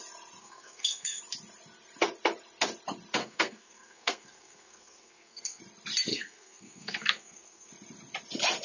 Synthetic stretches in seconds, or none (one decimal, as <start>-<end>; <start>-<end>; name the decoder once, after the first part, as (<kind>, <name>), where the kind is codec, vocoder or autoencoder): 0.4-1.2 (codec, SNAC); 3.2-5.6; 6.1-7.7